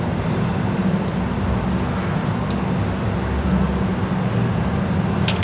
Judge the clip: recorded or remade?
recorded